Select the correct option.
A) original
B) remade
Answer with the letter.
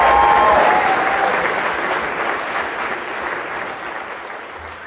A